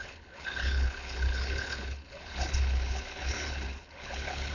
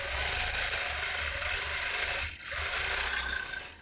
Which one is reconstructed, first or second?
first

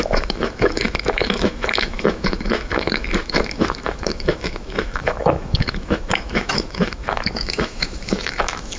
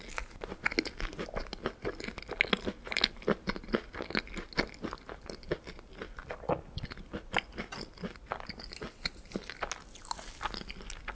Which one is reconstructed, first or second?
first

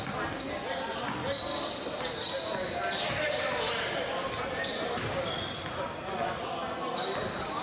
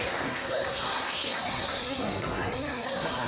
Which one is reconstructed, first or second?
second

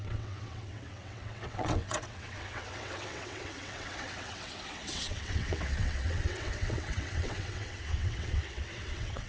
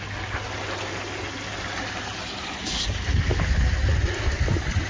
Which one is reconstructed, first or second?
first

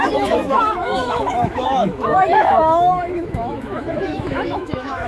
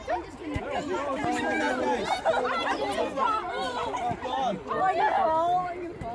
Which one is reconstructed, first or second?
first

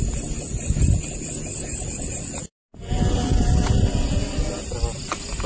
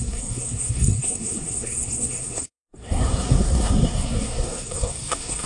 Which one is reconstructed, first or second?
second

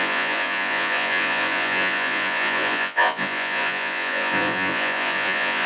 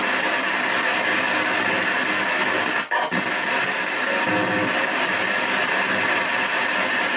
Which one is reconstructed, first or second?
first